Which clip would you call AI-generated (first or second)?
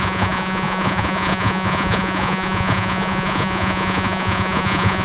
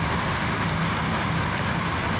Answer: first